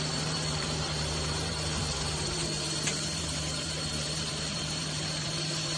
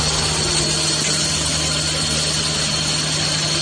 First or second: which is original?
second